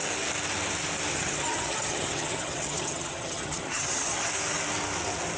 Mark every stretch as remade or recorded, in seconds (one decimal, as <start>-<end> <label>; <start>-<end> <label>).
0.0-1.1 recorded; 1.1-4.3 remade; 4.3-5.4 recorded